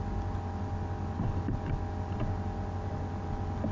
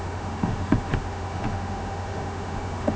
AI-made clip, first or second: second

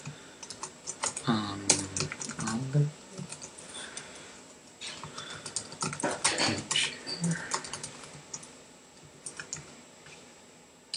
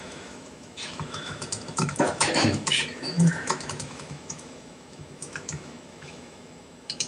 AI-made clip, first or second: second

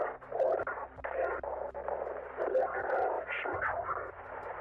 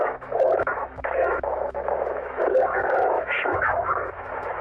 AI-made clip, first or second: second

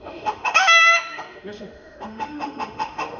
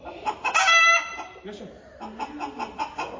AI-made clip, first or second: first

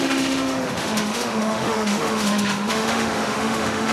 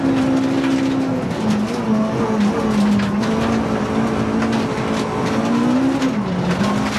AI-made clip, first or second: first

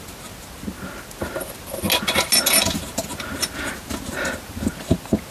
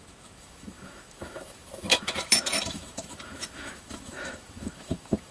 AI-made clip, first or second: second